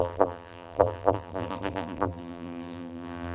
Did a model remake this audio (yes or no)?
yes